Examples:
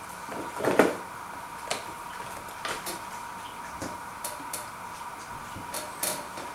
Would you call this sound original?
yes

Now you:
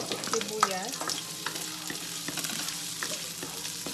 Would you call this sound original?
yes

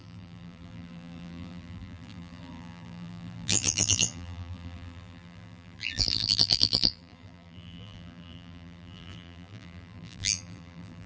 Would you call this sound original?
no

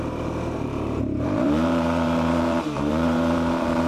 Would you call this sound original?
no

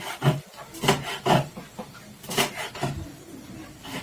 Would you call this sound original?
yes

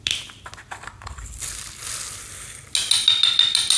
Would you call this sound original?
yes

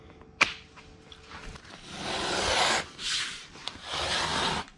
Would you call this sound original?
yes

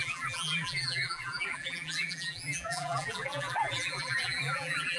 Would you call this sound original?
no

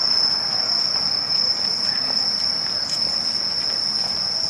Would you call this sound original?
yes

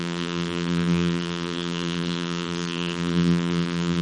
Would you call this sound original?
no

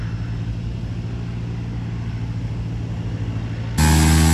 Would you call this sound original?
yes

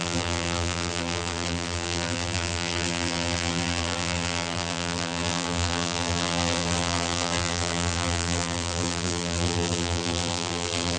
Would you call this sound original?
no